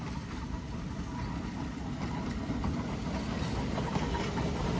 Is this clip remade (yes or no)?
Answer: no